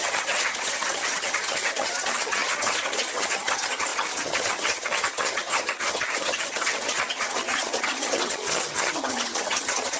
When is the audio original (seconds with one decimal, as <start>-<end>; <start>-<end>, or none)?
none